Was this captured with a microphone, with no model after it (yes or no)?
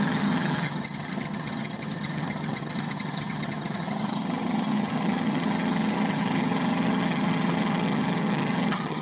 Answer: no